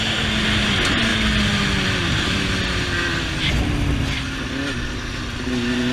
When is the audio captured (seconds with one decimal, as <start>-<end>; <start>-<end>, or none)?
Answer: 0.0-5.9